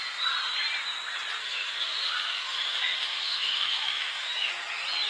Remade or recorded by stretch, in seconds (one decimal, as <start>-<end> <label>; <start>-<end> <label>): 0.0-1.4 recorded; 1.4-4.5 remade; 4.5-5.1 recorded